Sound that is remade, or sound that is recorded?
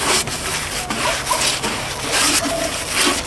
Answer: recorded